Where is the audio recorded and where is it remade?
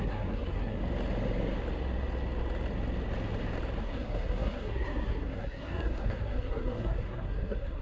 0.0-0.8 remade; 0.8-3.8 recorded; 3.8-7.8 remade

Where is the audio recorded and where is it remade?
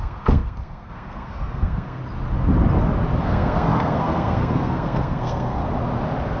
0.0-2.0 remade; 2.0-3.2 recorded; 3.2-5.6 remade; 5.6-6.4 recorded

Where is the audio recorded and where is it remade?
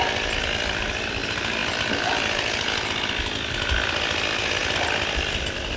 0.0-5.8 recorded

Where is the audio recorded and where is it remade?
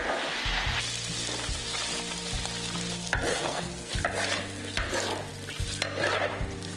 0.0-3.3 recorded; 3.3-3.9 remade; 3.9-6.8 recorded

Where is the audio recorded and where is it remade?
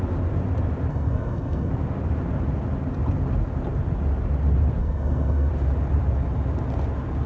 0.0-0.9 recorded; 0.9-1.7 remade; 1.7-4.8 recorded; 4.8-5.5 remade; 5.5-7.3 recorded